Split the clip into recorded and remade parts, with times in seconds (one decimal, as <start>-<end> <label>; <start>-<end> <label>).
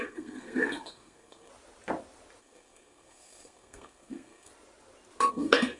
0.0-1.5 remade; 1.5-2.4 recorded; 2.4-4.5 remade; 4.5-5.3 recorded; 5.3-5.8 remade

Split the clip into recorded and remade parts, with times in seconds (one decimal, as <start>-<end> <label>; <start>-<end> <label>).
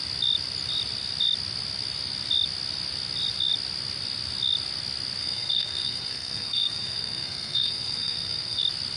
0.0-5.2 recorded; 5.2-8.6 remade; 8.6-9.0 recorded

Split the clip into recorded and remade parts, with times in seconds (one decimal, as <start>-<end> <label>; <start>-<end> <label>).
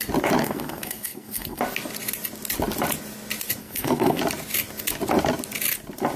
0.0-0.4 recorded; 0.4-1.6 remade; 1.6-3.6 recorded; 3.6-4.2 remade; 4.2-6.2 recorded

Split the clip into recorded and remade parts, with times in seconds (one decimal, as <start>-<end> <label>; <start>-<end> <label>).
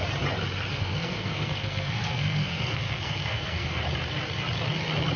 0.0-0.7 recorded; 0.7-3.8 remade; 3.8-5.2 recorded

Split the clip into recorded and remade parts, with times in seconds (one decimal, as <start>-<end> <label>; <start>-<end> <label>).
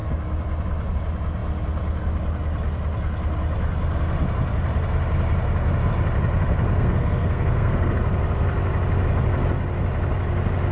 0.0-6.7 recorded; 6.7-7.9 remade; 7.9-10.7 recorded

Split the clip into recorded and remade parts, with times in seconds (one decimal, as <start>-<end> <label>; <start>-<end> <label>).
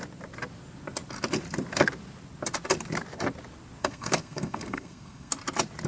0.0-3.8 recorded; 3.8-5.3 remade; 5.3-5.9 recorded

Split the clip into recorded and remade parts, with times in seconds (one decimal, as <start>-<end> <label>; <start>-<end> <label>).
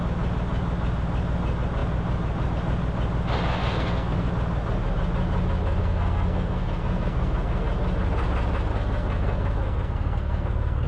0.0-3.6 recorded; 3.6-4.3 remade; 4.3-5.8 recorded; 5.8-7.7 remade; 7.7-8.7 recorded; 8.7-10.9 remade